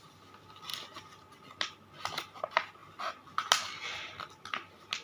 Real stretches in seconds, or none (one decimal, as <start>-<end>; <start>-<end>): 0.0-5.0